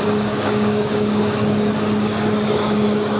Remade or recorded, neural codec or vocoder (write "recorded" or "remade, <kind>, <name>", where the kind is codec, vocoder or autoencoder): remade, codec, DAC